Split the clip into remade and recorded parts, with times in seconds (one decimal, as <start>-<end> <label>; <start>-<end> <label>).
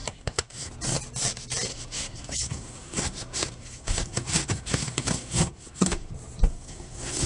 0.0-0.7 remade; 0.7-1.7 recorded; 1.7-6.1 remade; 6.1-6.5 recorded; 6.5-7.3 remade